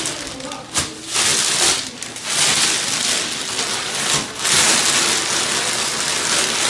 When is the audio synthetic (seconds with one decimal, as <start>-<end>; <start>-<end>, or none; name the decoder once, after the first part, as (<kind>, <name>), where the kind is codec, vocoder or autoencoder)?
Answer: none